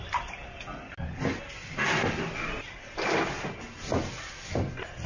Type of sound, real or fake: real